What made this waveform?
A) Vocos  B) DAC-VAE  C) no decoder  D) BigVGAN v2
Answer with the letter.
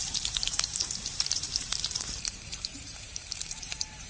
D